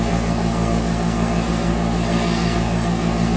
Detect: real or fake fake